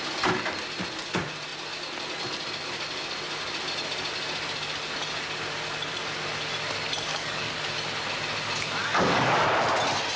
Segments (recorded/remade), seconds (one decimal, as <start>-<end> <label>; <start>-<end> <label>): 0.0-7.1 recorded; 7.1-7.7 remade; 7.7-8.8 recorded; 8.8-9.6 remade; 9.6-10.2 recorded